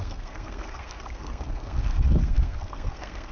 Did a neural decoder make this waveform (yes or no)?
yes